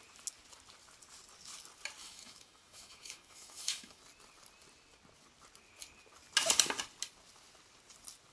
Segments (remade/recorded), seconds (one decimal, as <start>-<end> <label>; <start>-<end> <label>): 0.0-2.0 recorded; 2.0-4.0 remade; 4.0-8.3 recorded